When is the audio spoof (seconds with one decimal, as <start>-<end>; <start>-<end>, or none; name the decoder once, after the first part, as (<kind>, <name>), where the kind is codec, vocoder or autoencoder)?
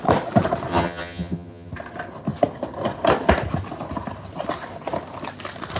0.7-1.7 (vocoder, HiFi-GAN)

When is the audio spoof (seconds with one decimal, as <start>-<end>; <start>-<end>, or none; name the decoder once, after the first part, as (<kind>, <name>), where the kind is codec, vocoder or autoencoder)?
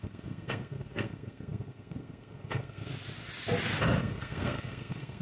0.0-2.9 (codec, SNAC); 4.0-5.2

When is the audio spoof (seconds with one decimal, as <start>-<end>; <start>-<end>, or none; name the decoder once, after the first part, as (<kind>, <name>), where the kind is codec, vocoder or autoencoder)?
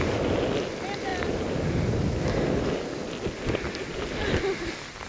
none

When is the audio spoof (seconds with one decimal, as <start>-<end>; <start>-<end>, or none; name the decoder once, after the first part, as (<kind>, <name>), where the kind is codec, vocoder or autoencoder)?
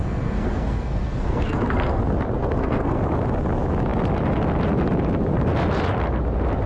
0.0-2.0 (codec, SNAC); 2.4-3.0